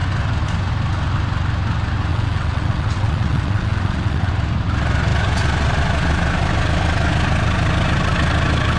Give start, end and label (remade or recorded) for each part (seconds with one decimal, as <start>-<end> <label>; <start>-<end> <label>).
0.0-2.1 recorded; 2.1-4.3 remade; 4.3-8.8 recorded